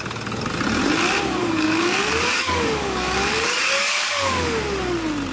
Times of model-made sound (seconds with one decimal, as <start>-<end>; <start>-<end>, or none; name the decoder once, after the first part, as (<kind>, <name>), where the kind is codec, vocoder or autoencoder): 1.4-4.6 (codec, DAC)